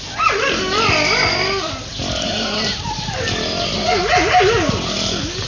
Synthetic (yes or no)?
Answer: no